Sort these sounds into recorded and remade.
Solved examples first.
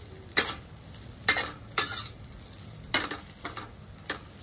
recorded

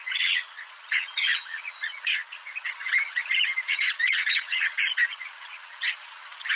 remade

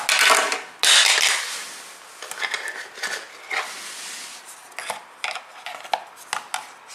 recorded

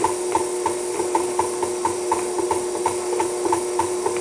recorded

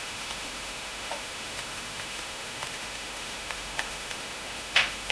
remade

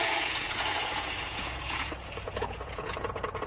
remade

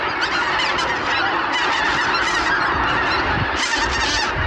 recorded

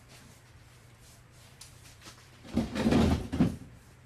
remade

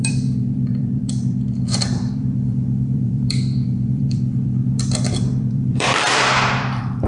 remade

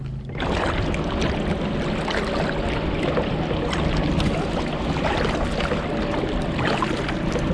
recorded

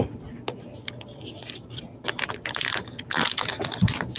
recorded